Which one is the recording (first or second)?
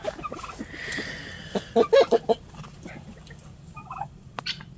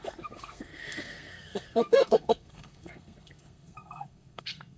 first